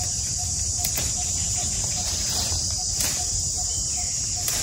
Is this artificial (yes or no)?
yes